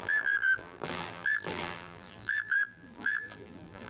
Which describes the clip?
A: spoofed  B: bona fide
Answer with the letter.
A